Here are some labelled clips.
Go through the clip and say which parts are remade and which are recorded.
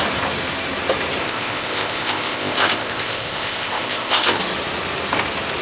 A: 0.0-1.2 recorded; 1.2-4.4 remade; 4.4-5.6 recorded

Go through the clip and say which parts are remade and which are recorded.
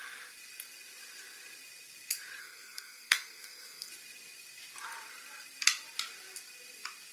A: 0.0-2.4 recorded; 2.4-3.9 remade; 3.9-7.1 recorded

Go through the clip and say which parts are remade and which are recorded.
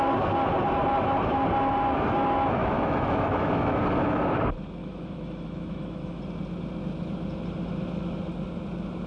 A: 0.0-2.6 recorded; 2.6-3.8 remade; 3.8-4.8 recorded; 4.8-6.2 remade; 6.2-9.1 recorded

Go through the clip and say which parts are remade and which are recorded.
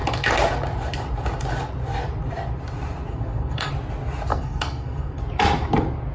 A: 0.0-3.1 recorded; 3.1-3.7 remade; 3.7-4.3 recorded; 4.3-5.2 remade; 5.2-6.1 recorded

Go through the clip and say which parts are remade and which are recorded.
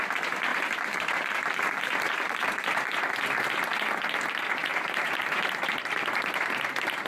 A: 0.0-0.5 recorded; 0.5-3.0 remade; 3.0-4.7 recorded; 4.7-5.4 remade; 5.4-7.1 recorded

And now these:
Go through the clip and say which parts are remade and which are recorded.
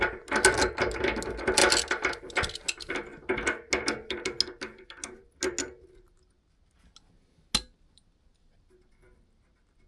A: 0.0-9.9 recorded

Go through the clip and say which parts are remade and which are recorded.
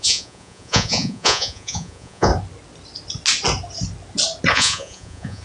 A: 0.0-2.3 remade; 2.3-4.5 recorded; 4.5-5.4 remade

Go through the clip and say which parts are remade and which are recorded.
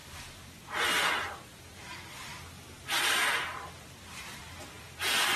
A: 0.0-2.3 remade; 2.3-2.9 recorded; 2.9-5.4 remade